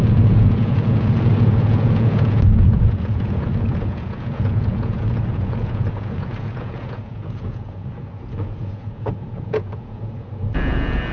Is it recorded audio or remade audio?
remade